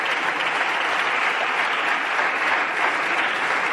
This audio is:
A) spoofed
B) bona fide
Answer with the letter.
B